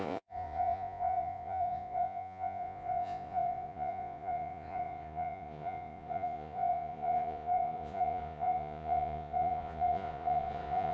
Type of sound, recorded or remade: remade